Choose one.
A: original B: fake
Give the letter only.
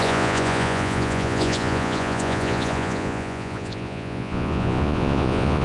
B